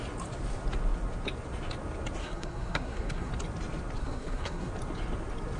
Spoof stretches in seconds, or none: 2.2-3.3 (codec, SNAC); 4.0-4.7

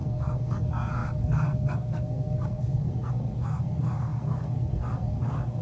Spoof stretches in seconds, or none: 0.0-5.6 (codec, SNAC)

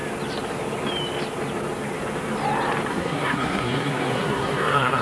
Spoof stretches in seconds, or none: 2.9-5.0 (codec, SNAC)